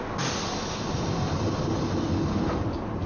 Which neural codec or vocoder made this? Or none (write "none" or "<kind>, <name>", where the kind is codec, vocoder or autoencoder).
none